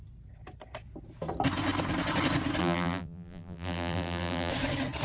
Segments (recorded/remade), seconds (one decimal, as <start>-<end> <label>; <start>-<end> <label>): 0.0-2.6 recorded; 2.6-4.5 remade; 4.5-5.0 recorded